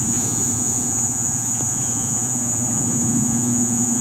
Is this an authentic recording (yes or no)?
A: no